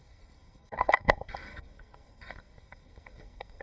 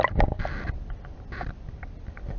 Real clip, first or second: second